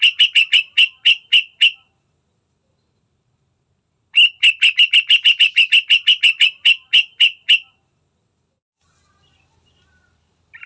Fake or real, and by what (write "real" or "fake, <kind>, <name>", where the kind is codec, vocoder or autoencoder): real